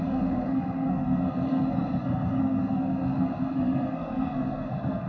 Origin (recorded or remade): remade